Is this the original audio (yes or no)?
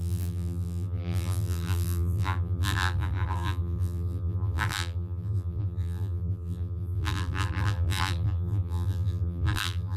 no